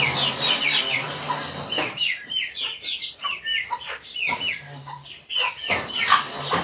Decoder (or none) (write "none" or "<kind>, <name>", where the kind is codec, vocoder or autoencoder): none